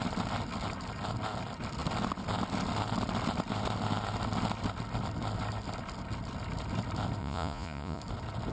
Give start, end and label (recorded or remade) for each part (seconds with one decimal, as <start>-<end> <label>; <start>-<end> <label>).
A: 0.0-7.2 recorded; 7.2-8.0 remade; 8.0-8.5 recorded